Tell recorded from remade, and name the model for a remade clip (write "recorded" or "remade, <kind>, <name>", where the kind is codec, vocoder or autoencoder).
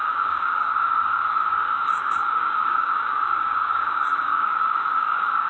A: remade, codec, DAC